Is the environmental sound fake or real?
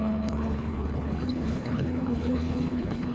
fake